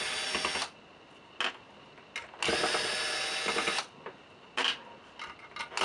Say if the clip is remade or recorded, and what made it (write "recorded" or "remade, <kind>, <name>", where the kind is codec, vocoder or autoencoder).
recorded